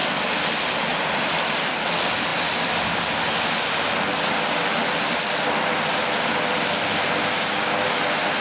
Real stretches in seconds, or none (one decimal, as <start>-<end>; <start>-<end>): 0.0-8.4